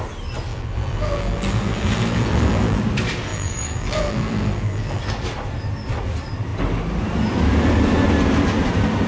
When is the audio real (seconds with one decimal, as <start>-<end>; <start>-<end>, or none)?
0.0-0.5; 2.8-3.3; 5.0-9.1